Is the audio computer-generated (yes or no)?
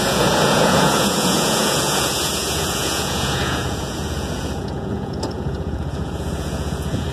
yes